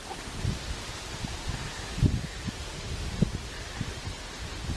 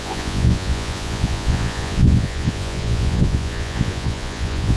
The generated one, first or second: second